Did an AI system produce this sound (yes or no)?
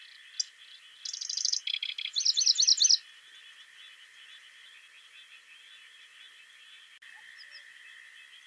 no